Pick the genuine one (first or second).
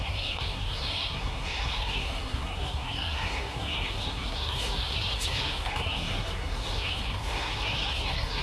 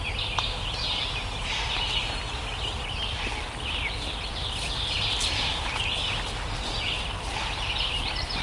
second